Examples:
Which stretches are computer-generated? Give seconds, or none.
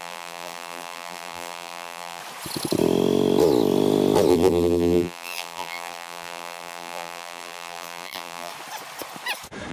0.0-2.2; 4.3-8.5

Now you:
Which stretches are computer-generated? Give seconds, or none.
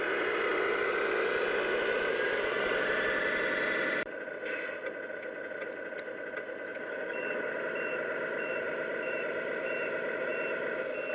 0.0-10.3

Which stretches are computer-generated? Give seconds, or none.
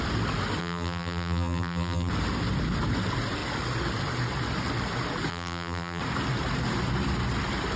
0.6-2.1; 5.3-6.0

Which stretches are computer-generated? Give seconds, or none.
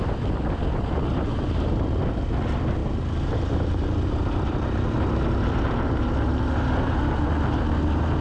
none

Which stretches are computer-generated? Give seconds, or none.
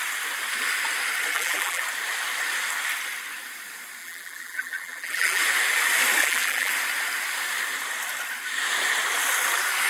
1.3-1.8; 4.0-5.4; 6.2-6.7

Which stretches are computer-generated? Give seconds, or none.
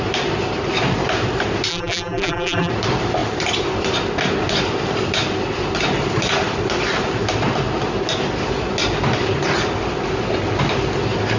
1.7-2.7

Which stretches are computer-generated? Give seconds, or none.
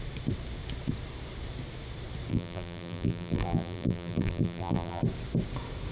2.3-5.0